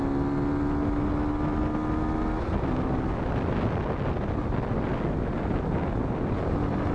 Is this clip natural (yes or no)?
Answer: yes